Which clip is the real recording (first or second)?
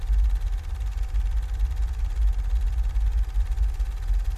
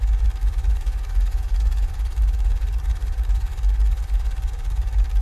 first